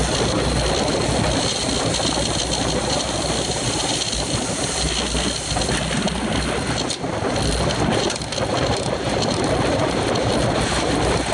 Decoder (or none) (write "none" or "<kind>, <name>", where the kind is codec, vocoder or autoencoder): none